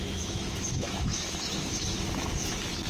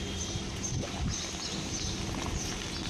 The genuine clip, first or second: second